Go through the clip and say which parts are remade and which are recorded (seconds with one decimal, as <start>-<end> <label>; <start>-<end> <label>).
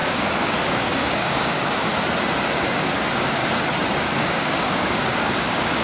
0.0-1.9 remade; 1.9-2.6 recorded; 2.6-3.4 remade; 3.4-4.0 recorded; 4.0-5.8 remade